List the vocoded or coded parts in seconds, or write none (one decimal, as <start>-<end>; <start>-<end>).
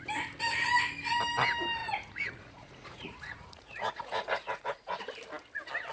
1.8-5.0